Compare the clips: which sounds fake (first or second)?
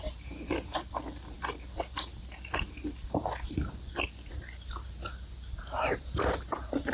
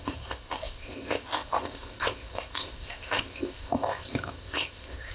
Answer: second